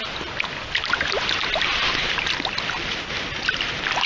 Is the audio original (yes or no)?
yes